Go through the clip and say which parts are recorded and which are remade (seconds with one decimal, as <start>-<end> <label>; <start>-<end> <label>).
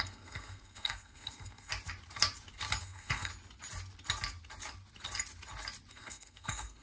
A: 0.0-1.7 remade; 1.7-2.8 recorded; 2.8-3.3 remade; 3.3-5.9 recorded; 5.9-6.8 remade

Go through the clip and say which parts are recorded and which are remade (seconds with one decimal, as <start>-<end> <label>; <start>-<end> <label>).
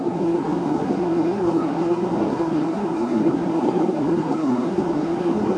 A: 0.0-5.6 remade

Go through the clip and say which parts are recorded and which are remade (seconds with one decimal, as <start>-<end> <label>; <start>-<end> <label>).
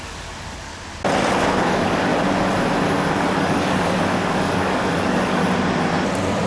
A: 0.0-0.7 remade; 0.7-1.3 recorded; 1.3-2.1 remade; 2.1-3.1 recorded; 3.1-5.4 remade; 5.4-6.5 recorded